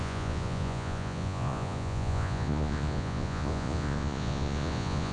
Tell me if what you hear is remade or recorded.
remade